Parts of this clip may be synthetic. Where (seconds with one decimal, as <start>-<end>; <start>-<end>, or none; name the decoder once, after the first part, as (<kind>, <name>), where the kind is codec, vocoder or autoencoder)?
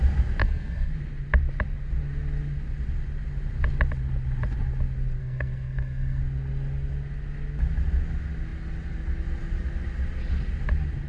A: 0.4-0.9 (codec, SNAC); 5.2-6.2